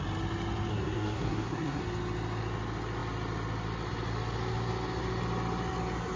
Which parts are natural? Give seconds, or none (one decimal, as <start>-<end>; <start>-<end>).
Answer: 0.0-0.7; 1.8-6.2